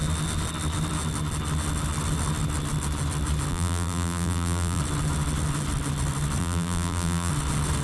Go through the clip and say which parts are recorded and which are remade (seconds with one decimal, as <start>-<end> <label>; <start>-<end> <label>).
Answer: 0.0-3.5 recorded; 3.5-4.8 remade; 4.8-6.4 recorded; 6.4-7.3 remade; 7.3-7.8 recorded